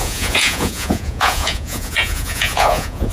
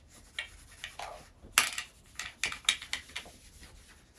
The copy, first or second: first